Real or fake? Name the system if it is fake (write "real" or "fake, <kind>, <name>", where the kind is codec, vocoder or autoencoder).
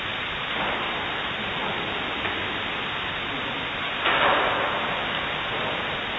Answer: real